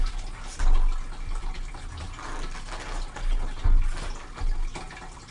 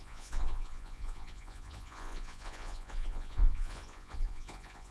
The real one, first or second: first